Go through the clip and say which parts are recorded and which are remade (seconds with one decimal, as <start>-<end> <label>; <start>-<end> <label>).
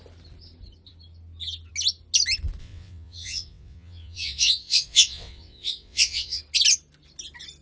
0.0-2.6 recorded; 2.6-6.4 remade; 6.4-7.6 recorded